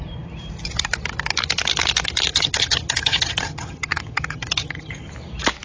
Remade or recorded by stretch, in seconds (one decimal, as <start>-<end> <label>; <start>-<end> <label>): 0.0-2.3 recorded; 2.3-5.1 remade; 5.1-5.6 recorded